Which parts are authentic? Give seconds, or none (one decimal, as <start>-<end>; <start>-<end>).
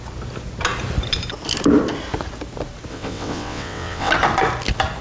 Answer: 0.0-2.9; 4.1-5.0